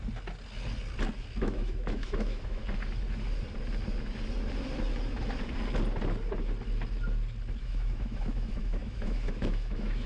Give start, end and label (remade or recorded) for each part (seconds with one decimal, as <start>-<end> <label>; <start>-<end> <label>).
0.0-1.4 recorded; 1.4-2.6 remade; 2.6-7.6 recorded; 7.6-10.1 remade